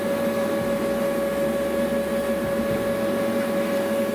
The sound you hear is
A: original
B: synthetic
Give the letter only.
A